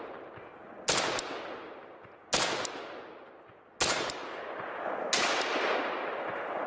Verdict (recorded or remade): recorded